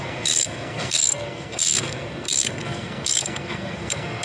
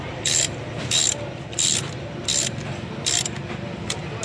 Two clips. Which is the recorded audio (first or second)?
second